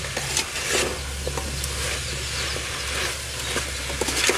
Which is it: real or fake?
real